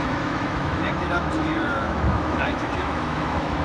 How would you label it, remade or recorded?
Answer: remade